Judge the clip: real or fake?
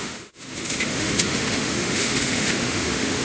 fake